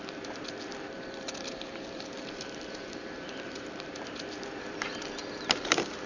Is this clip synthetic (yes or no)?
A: yes